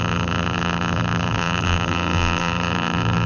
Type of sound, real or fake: fake